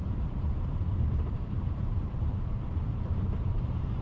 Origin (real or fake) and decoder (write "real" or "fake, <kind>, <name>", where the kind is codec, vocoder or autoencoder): fake, vocoder, BigVGAN v2